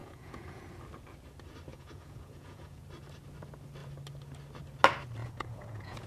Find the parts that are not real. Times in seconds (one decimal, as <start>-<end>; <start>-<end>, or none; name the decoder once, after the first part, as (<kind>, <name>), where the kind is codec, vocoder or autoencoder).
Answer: 0.0-0.6 (vocoder, Vocos); 1.7-2.8; 5.2-6.1